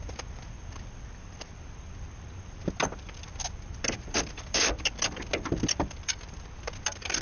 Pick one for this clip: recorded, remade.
recorded